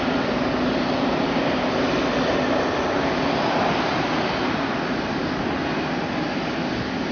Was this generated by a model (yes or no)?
no